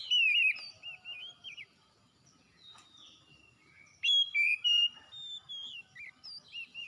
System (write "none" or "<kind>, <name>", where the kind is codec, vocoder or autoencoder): vocoder, BigVGAN v2